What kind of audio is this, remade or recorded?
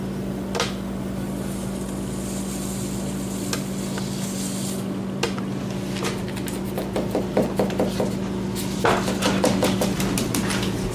recorded